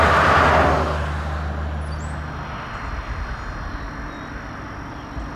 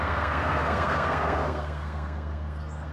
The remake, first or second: second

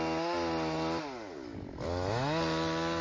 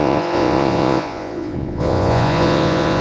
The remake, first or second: second